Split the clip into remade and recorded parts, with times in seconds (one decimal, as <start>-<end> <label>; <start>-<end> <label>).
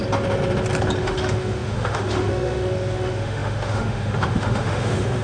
0.0-1.0 recorded; 1.0-5.2 remade